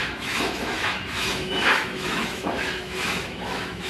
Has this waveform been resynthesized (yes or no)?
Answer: yes